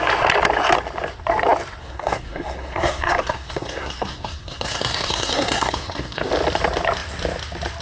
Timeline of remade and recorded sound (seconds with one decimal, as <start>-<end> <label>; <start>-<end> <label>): 0.0-1.8 recorded; 1.8-6.3 remade; 6.3-7.8 recorded